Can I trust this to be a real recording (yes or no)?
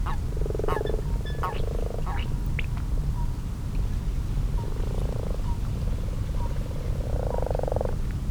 yes